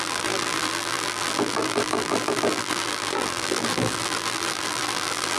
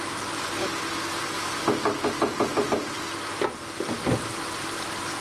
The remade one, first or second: first